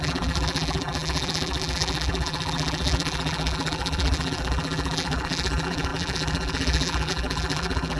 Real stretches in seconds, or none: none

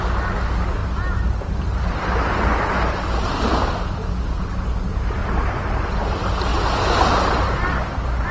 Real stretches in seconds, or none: 0.0-0.8; 2.0-6.5; 7.0-8.3

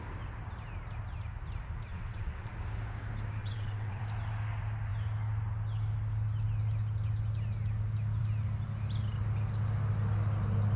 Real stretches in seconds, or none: 0.0-1.9; 2.5-3.4; 4.0-10.8

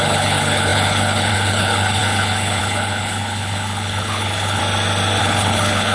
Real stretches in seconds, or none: 4.6-5.2

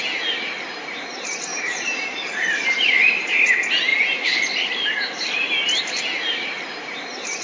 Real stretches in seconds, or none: 0.0-1.5; 3.5-3.9; 4.7-7.4

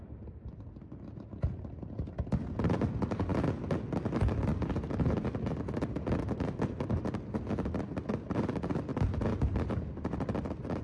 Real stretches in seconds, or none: 0.0-10.8

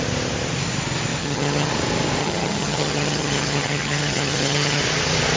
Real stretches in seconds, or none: 0.0-1.2; 1.7-2.2; 4.8-5.4

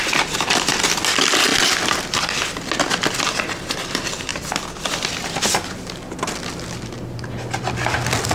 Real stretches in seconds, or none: 0.0-8.3